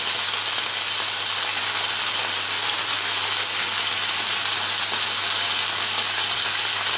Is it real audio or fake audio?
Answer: real